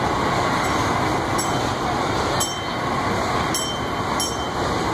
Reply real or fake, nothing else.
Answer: real